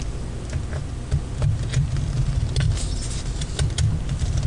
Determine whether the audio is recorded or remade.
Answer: recorded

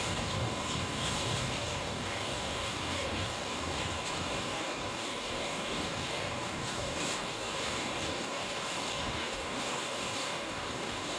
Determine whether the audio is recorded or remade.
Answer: remade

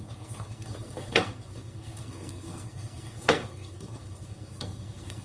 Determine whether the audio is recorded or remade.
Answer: remade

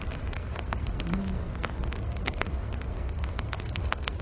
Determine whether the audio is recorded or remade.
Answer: remade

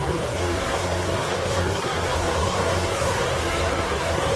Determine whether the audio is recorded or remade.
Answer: remade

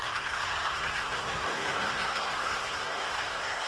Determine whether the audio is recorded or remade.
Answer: remade